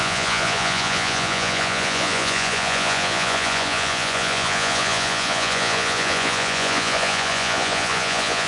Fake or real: fake